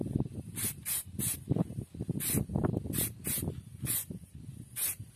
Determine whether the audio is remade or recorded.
recorded